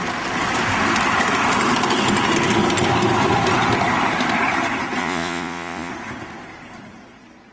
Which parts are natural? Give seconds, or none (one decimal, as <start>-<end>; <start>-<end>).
0.0-5.0; 5.9-7.5